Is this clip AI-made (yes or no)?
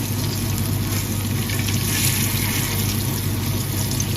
no